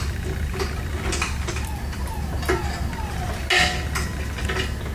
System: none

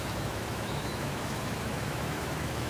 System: autoencoder, DAC-VAE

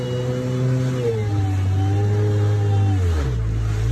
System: none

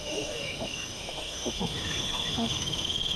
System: autoencoder, DAC-VAE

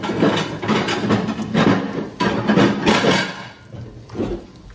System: none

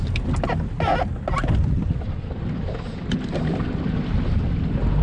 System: none